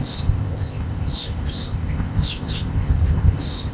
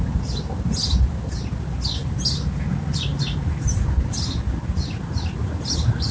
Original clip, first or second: second